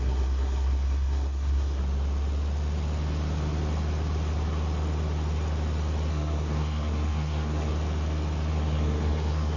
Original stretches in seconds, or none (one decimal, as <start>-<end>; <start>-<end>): 1.8-6.1; 7.7-8.5